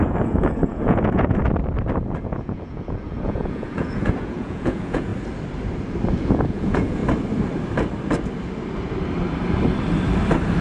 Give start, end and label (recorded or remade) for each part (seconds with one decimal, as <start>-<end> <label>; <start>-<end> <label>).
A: 0.0-1.4 remade; 1.4-2.2 recorded; 2.2-5.1 remade; 5.1-6.2 recorded; 6.2-7.0 remade; 7.0-10.6 recorded